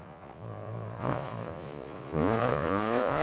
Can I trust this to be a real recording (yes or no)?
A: no